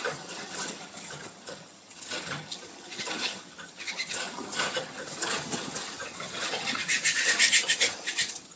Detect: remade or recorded remade